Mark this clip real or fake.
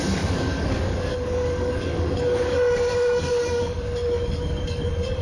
fake